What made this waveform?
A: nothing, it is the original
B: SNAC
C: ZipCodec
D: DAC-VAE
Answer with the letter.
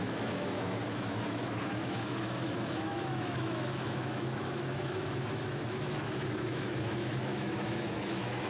D